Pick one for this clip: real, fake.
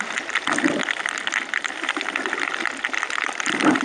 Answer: fake